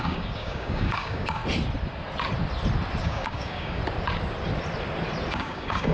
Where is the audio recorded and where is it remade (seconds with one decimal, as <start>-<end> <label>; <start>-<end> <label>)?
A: 0.0-1.4 remade; 1.4-3.0 recorded; 3.0-3.8 remade; 3.8-5.3 recorded; 5.3-5.9 remade